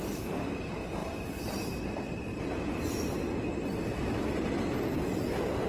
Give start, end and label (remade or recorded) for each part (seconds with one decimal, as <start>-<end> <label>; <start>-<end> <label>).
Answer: 0.0-1.0 recorded; 1.0-1.8 remade; 1.8-5.7 recorded